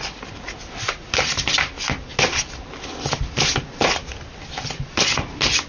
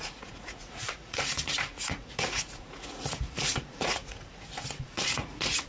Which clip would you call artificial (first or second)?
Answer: second